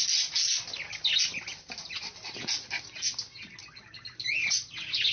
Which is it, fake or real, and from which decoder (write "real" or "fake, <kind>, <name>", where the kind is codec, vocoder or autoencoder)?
real